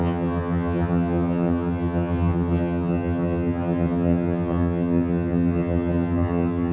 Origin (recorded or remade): remade